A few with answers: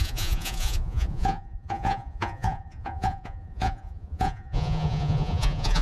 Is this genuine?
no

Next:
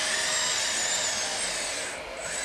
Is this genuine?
yes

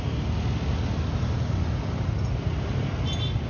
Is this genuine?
yes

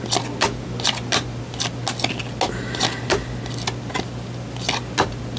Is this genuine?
yes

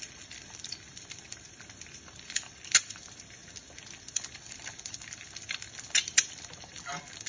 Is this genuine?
no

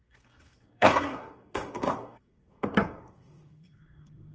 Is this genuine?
no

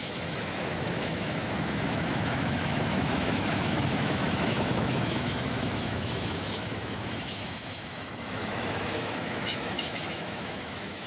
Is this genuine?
no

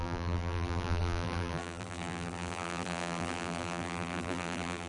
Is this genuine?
no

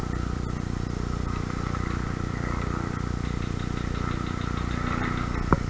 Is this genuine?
yes